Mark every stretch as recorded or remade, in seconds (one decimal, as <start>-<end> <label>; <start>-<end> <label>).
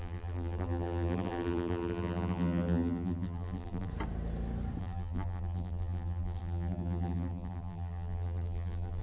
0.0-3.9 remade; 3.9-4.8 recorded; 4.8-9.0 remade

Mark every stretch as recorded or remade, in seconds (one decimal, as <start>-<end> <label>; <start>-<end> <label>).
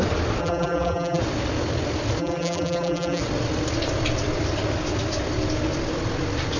0.0-0.4 recorded; 0.4-1.2 remade; 1.2-2.2 recorded; 2.2-3.2 remade; 3.2-6.6 recorded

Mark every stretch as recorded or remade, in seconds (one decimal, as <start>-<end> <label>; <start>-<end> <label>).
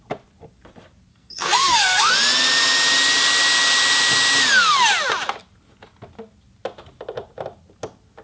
0.0-1.1 recorded; 1.1-2.1 remade; 2.1-8.2 recorded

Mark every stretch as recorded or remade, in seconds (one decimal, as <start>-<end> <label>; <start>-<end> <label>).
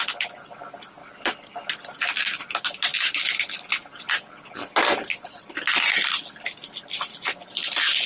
0.0-8.1 recorded